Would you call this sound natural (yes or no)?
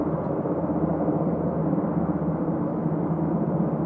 yes